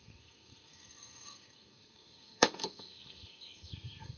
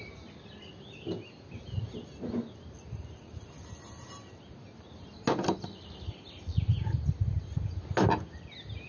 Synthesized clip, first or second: first